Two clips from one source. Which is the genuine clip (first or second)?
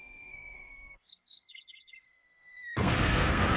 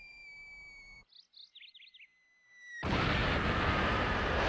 second